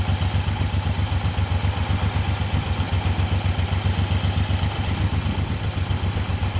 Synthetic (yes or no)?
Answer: no